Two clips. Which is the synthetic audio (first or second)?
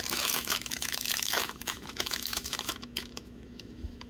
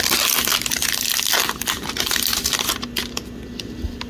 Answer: first